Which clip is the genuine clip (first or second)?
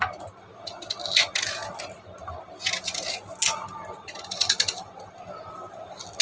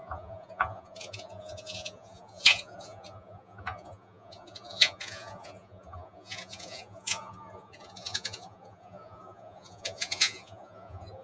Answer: first